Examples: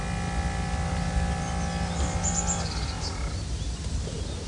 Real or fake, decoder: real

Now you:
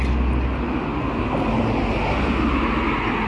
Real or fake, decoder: real